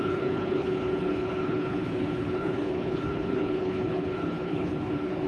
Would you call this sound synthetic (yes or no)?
yes